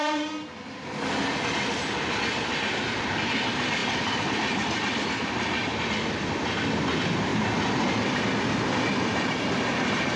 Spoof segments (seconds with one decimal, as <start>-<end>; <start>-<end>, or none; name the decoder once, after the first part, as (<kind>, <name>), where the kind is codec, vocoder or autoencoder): 0.0-3.8 (vocoder, BigVGAN v2); 5.8-7.3; 9.4-10.2